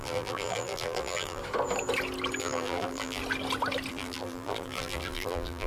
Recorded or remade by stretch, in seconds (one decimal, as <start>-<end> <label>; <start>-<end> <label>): 0.0-1.4 remade; 1.4-2.4 recorded; 2.4-3.2 remade; 3.2-3.9 recorded; 3.9-5.7 remade